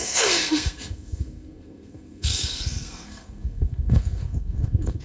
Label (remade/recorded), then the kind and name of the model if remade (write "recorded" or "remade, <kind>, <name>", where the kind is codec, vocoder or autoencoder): remade, codec, SNAC